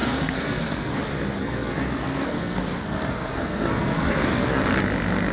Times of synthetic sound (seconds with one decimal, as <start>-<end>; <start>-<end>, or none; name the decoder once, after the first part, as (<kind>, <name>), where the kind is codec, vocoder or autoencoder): 0.0-1.0 (codec, SNAC); 1.4-4.6